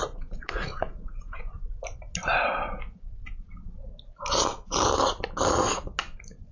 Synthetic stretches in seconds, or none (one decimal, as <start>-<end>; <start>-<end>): 0.0-1.7

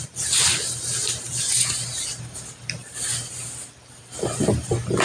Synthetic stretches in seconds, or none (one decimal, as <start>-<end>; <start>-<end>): none

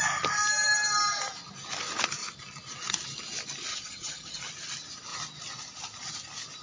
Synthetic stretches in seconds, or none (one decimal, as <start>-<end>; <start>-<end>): 3.7-4.4

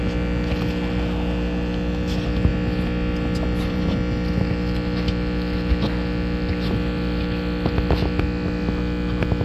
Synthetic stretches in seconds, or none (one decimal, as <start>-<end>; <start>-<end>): 2.5-4.4